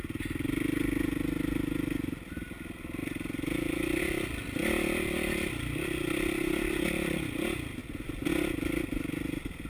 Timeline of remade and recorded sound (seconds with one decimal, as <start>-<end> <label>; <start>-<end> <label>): 0.0-9.7 recorded